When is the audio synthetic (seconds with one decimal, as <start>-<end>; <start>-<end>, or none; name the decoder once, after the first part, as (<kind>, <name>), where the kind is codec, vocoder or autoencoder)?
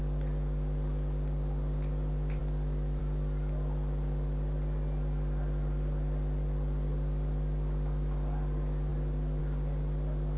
none